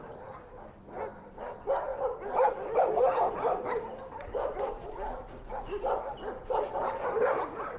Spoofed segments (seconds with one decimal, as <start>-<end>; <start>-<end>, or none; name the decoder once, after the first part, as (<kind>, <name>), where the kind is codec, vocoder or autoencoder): none